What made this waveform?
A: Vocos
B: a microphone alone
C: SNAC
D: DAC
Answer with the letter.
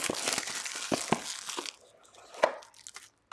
B